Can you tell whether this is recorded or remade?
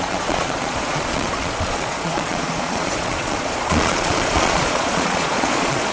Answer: remade